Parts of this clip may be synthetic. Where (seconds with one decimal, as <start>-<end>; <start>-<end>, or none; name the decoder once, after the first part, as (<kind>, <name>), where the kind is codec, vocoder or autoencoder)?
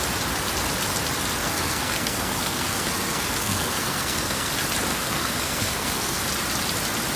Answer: 1.4-4.5 (codec, SNAC); 4.9-6.2